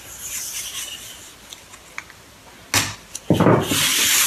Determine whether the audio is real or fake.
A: real